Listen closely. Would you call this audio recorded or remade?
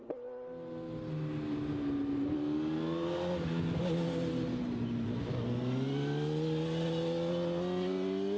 recorded